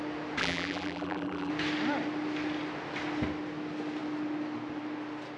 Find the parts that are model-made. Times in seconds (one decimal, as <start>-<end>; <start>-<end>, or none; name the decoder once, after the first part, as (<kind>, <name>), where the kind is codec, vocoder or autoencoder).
0.4-1.5 (vocoder, BigVGAN v2)